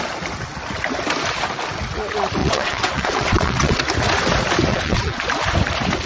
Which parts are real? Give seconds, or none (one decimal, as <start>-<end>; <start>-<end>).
0.0-2.4; 3.8-4.7; 5.2-6.1